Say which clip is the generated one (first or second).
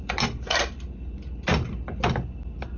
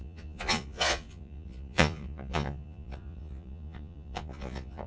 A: second